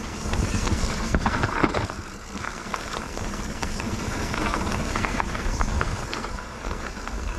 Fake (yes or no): yes